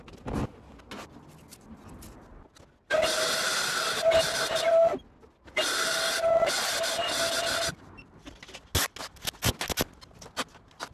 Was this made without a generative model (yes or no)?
yes